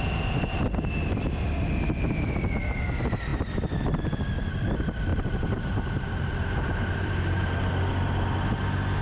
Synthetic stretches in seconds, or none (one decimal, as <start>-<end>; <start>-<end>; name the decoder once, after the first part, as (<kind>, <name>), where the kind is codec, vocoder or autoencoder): 5.1-7.7 (vocoder, BigVGAN v2)